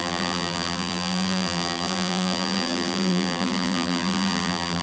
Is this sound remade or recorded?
remade